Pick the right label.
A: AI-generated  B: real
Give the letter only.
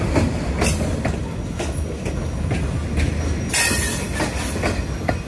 B